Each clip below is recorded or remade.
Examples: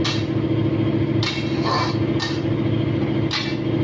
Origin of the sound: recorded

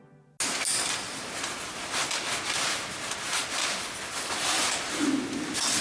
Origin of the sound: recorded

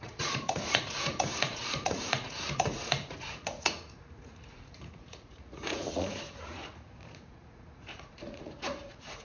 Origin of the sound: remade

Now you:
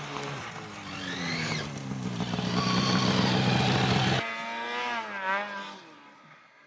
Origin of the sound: recorded